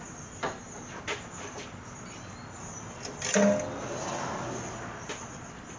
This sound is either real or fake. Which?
real